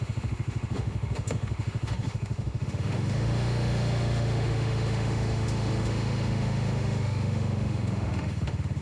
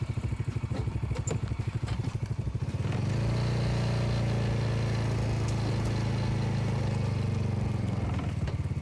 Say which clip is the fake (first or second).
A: first